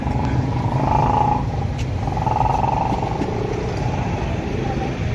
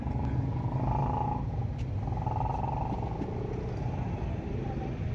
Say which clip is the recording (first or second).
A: second